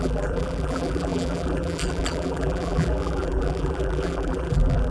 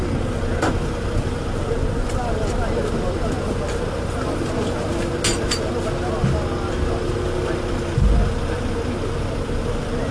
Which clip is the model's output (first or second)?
first